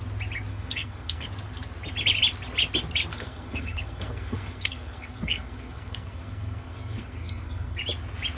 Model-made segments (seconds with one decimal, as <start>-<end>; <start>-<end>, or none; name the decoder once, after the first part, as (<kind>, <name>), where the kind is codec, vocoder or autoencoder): 0.5-1.3 (codec, SNAC); 3.1-7.8